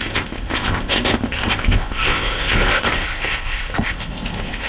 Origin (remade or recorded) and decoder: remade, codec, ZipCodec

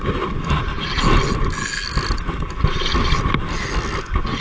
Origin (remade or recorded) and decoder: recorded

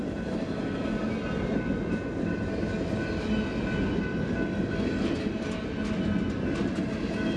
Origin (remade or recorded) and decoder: recorded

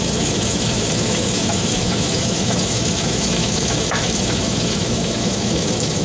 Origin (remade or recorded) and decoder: remade, autoencoder, DAC-VAE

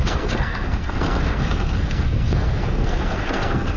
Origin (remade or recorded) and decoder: remade, codec, SNAC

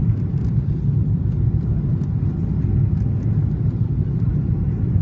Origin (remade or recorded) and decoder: recorded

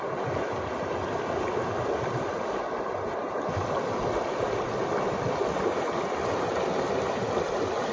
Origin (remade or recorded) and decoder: recorded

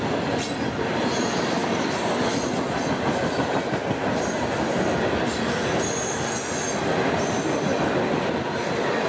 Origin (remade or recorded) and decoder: recorded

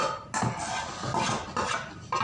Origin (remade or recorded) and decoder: recorded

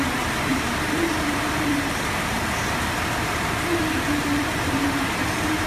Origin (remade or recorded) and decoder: remade, vocoder, BigVGAN v2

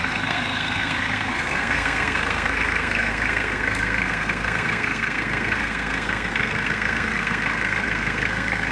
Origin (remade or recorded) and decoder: remade, codec, SNAC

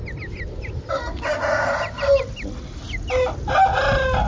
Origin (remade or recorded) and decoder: recorded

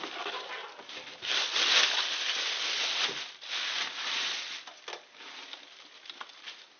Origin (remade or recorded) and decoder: recorded